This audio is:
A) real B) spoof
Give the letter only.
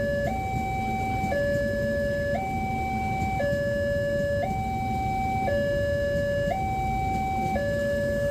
A